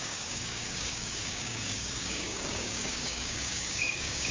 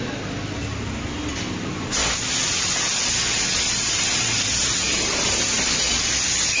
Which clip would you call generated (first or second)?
first